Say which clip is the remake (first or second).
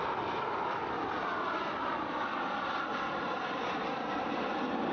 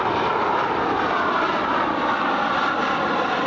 second